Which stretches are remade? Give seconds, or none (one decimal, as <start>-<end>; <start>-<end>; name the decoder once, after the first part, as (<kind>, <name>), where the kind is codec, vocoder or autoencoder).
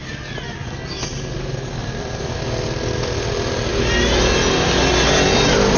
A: 1.8-3.7 (vocoder, BigVGAN v2)